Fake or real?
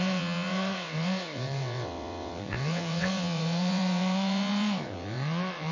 fake